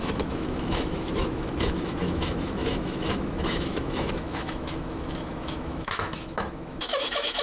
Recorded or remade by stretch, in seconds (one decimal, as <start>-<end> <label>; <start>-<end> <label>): 0.0-7.4 remade